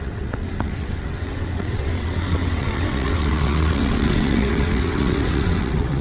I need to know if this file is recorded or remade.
remade